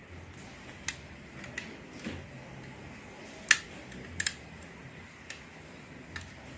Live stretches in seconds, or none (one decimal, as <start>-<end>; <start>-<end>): 0.0-6.6